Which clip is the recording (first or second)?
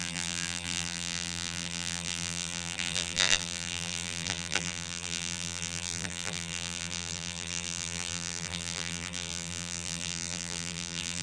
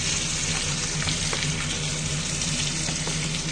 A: second